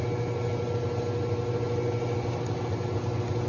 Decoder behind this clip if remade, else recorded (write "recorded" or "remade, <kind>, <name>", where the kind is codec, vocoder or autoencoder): recorded